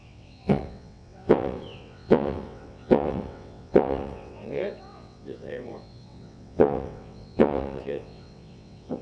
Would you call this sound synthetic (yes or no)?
yes